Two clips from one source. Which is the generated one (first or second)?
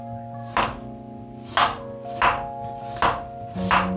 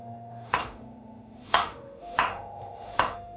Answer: second